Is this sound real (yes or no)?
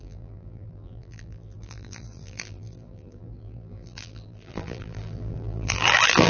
no